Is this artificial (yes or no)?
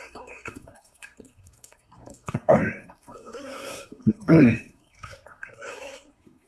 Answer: yes